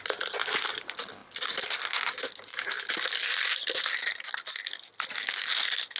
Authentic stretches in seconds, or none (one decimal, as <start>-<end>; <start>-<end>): 0.0-6.0